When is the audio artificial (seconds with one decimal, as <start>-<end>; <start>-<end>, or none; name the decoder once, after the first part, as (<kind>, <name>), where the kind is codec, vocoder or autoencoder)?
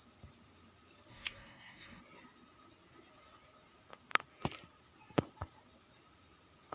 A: 1.1-2.0 (codec, SNAC)